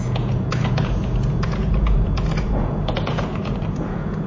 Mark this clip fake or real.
fake